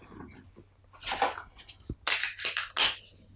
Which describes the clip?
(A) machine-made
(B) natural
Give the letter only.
B